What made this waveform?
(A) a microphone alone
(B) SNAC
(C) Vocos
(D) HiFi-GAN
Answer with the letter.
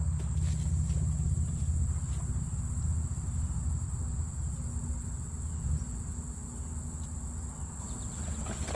A